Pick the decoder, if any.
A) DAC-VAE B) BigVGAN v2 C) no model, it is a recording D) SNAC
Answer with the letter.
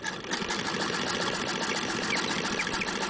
C